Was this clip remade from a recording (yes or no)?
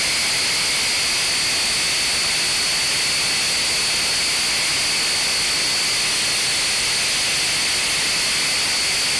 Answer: no